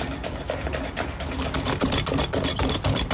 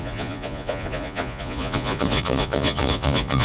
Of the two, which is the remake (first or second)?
second